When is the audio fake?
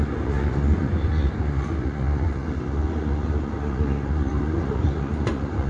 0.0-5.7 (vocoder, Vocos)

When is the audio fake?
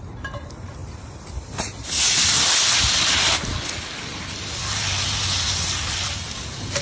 none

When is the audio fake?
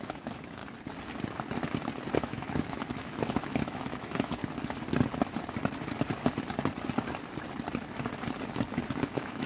0.0-0.6 (autoencoder, DAC-VAE); 2.2-4.4; 9.0-9.5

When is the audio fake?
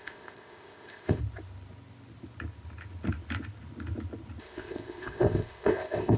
0.0-1.2 (codec, ZipCodec); 4.4-6.2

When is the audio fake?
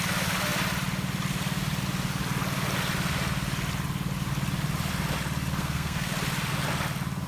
5.6-6.1 (codec, SNAC)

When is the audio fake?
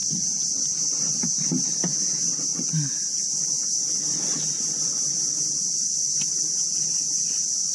2.5-4.0 (vocoder, BigVGAN v2)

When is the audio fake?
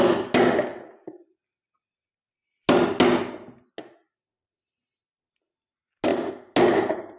none